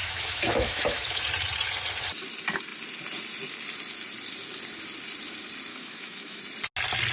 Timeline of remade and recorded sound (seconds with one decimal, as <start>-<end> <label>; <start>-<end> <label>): 0.0-1.2 remade; 1.2-5.7 recorded; 5.7-6.4 remade; 6.4-7.1 recorded